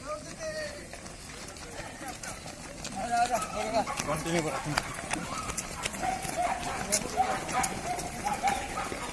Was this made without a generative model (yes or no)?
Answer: yes